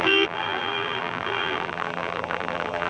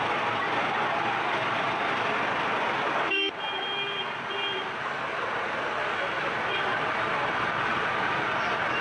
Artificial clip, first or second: first